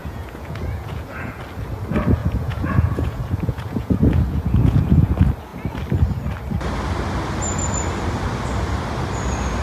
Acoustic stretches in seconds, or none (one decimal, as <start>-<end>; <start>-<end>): 1.4-2.2; 5.1-9.6